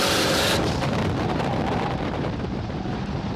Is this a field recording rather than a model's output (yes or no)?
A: no